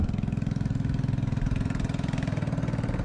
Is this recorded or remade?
recorded